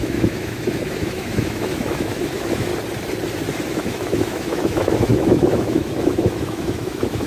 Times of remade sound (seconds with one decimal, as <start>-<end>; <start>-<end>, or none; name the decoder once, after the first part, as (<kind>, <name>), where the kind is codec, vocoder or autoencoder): 0.0-2.7 (autoencoder, DAC-VAE); 3.7-7.3

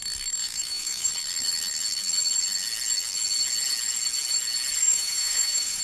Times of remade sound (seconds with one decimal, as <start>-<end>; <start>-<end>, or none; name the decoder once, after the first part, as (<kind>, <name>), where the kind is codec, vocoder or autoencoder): 0.4-1.1 (autoencoder, DAC-VAE); 4.8-5.8

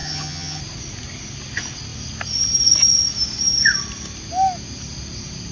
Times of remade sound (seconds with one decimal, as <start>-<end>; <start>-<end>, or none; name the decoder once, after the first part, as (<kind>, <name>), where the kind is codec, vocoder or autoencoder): 0.0-0.6 (vocoder, HiFi-GAN)